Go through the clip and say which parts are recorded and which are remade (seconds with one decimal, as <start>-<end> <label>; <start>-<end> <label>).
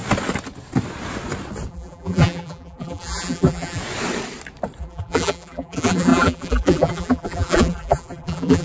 0.0-1.7 recorded; 1.7-3.8 remade; 3.8-4.8 recorded; 4.8-8.6 remade